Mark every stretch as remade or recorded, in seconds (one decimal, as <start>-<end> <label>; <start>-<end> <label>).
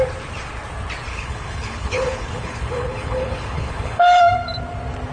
0.0-1.1 recorded; 1.1-4.2 remade; 4.2-5.1 recorded